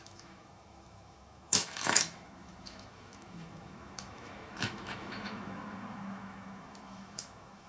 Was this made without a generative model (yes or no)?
no